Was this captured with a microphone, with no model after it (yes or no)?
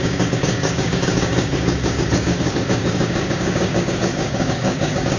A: no